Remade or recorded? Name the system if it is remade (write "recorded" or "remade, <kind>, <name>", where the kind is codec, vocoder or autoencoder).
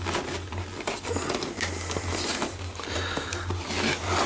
recorded